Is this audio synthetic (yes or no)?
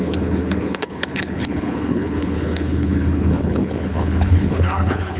yes